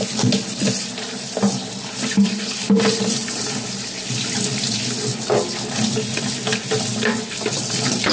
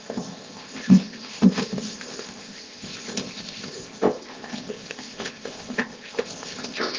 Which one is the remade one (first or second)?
second